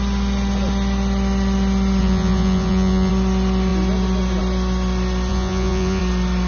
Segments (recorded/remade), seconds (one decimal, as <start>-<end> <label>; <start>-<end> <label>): 0.0-2.0 recorded; 2.0-3.1 remade; 3.1-5.3 recorded; 5.3-6.0 remade; 6.0-6.5 recorded